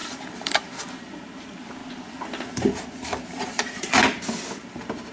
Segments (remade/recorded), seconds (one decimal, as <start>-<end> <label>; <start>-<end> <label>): 0.0-1.8 remade; 1.8-2.5 recorded; 2.5-4.0 remade; 4.0-4.6 recorded; 4.6-5.1 remade